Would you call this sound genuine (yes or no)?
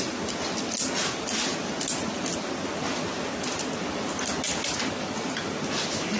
yes